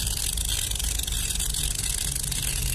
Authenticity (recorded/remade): recorded